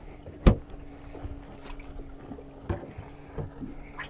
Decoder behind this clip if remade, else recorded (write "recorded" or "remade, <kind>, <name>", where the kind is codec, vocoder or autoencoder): recorded